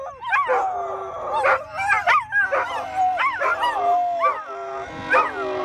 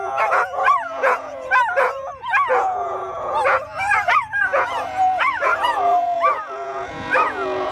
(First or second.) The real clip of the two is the first